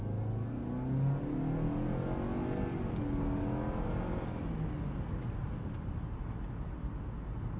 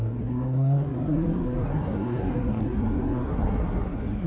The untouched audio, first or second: first